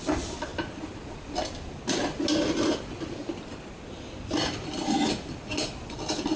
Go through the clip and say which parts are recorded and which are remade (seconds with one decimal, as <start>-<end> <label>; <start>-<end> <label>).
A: 0.0-6.4 recorded